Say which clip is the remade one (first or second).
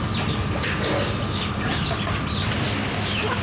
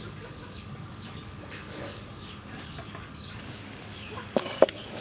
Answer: second